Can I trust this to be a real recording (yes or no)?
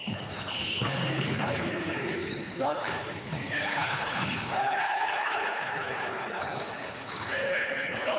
no